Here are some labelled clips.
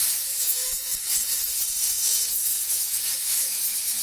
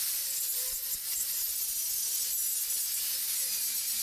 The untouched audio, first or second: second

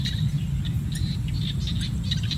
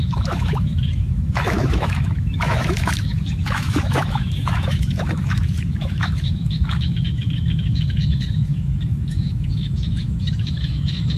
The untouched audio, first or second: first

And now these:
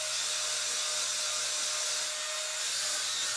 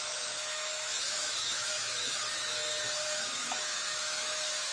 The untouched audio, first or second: first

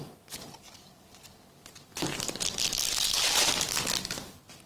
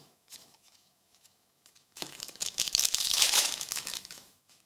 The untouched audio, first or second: first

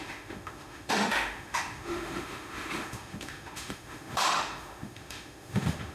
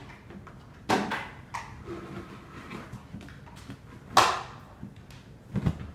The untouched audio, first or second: second